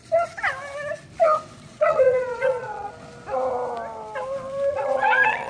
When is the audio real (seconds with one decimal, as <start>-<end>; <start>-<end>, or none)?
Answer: 0.0-1.7; 2.9-4.7